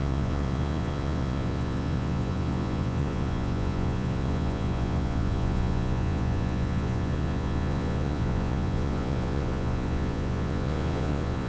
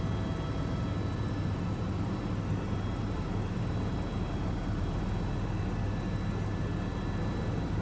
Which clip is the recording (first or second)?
second